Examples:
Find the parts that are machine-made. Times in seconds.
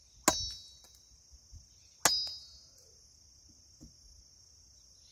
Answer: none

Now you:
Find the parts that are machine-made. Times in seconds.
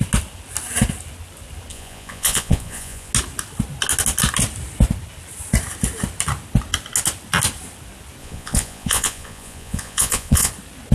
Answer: 1.7-3.1; 8.2-10.5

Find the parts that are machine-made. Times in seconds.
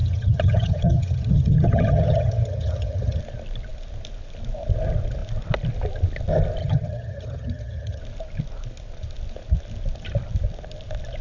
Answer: 0.0-3.2; 6.6-8.0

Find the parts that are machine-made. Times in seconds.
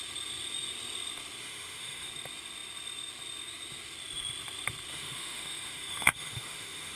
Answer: 1.4-2.1; 4.9-7.0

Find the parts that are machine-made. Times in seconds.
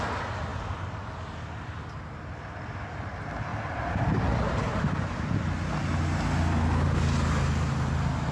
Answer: none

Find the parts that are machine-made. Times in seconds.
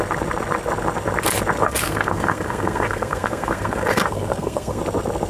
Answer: 1.6-4.8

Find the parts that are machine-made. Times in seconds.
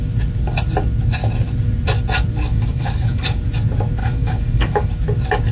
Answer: 2.5-3.4; 4.0-4.9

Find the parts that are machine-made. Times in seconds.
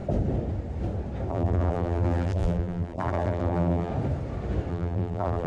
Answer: 1.3-3.9; 4.7-5.5